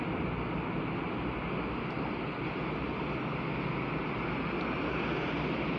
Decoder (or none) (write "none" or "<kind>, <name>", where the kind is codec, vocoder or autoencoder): none